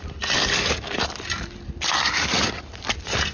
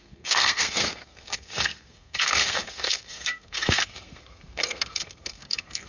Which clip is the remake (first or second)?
second